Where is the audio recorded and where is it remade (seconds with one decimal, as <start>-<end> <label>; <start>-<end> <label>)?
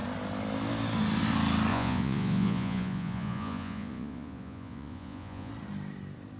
0.0-1.7 recorded; 1.7-5.5 remade; 5.5-6.4 recorded